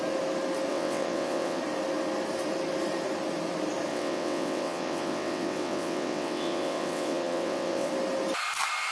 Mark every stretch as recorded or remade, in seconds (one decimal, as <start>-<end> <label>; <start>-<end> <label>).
0.0-0.7 recorded; 0.7-1.6 remade; 1.6-3.9 recorded; 3.9-7.9 remade; 7.9-8.9 recorded